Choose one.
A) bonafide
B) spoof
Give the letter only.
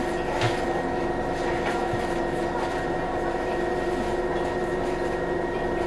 A